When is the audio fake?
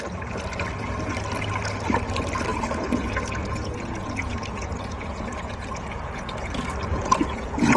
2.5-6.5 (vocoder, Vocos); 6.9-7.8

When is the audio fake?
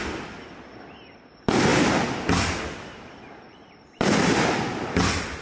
none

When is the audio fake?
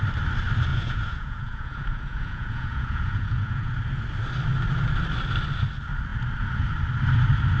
0.7-3.7 (vocoder, Vocos)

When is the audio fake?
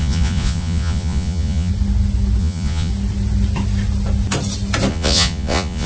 0.0-1.7 (vocoder, Vocos); 2.4-2.9; 4.9-5.9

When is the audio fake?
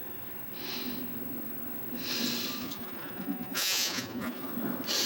2.6-4.5 (vocoder, Vocos)